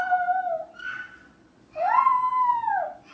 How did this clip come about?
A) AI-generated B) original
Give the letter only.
B